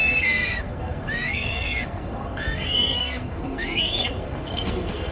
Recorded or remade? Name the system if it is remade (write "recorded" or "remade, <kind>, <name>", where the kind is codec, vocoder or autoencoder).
remade, codec, SNAC